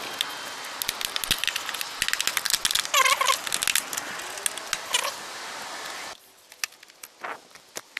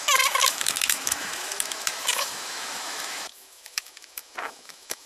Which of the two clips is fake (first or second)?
second